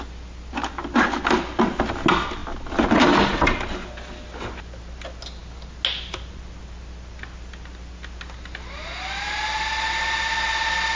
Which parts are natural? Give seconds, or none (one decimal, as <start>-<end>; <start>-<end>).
0.0-11.0